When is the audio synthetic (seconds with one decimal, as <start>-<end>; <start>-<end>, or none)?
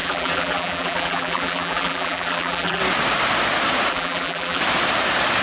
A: 0.0-2.8; 3.9-4.6